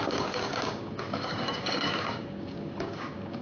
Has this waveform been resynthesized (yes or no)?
yes